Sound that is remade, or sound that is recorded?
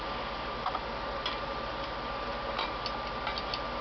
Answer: recorded